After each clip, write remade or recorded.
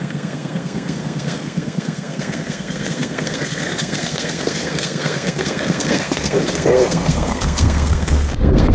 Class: remade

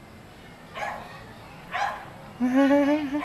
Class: recorded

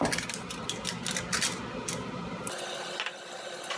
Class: recorded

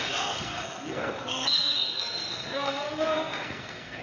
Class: remade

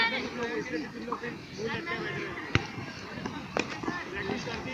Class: recorded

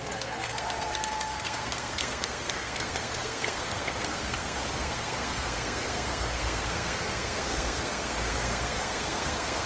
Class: remade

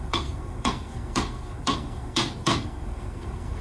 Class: remade